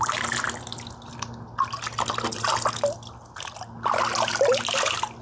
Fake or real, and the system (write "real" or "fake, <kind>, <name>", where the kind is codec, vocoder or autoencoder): real